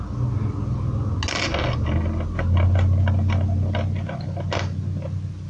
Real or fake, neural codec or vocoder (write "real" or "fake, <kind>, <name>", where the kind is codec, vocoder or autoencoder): real